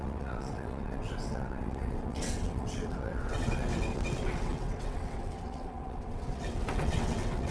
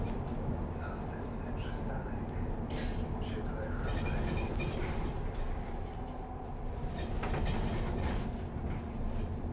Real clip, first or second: second